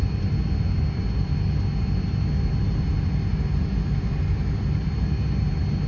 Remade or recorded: recorded